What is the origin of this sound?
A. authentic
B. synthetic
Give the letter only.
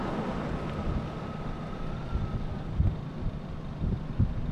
A